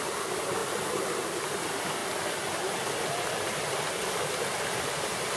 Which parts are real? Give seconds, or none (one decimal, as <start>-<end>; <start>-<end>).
0.6-1.5; 2.0-5.4